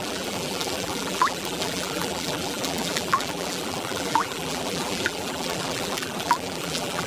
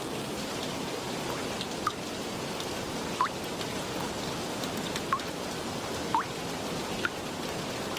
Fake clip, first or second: first